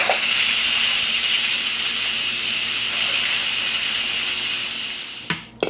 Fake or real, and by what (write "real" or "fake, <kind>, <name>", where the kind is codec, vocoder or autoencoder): real